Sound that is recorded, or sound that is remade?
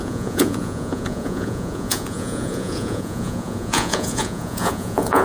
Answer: remade